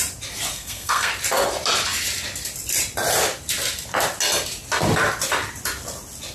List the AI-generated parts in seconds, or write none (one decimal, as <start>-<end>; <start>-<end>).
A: 0.5-1.1